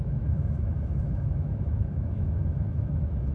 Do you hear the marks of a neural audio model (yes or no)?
yes